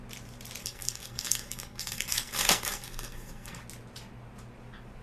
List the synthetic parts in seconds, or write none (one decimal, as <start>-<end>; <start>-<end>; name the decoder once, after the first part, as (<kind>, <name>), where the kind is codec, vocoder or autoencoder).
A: 0.6-3.6 (codec, SNAC)